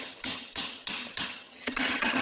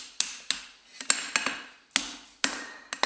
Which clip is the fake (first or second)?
first